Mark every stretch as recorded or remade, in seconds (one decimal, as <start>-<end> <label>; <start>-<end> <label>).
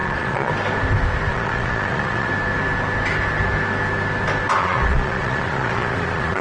0.0-0.5 remade; 0.5-1.3 recorded; 1.3-2.3 remade; 2.3-4.6 recorded; 4.6-6.4 remade